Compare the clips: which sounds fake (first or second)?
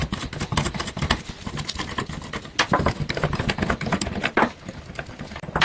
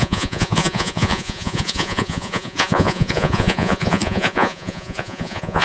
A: second